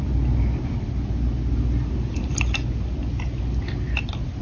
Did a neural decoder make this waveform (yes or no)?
no